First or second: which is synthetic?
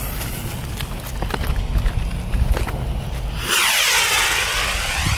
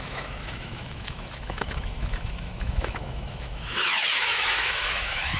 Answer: second